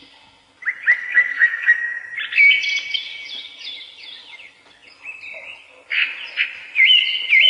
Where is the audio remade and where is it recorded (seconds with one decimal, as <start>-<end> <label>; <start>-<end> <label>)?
0.0-1.0 recorded; 1.0-1.8 remade; 1.8-7.5 recorded